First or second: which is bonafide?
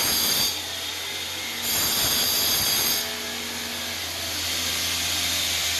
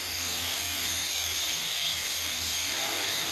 first